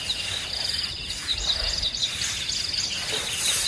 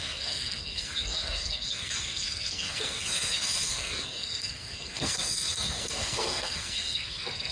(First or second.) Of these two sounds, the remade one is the second